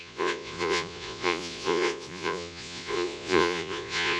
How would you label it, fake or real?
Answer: fake